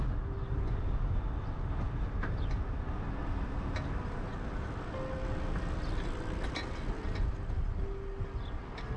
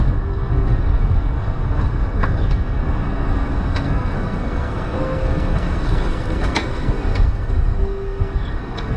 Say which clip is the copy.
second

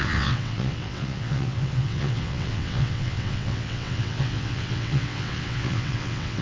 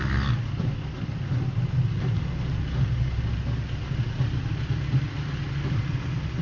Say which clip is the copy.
first